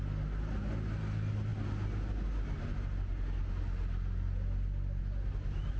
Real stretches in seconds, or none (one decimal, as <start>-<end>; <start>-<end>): 0.0-5.8

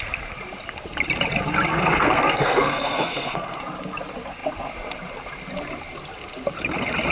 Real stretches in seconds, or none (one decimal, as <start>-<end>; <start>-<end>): 0.0-1.7; 3.6-7.1

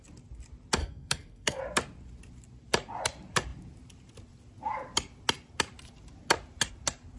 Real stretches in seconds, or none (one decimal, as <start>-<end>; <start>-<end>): 0.0-0.8; 1.6-7.2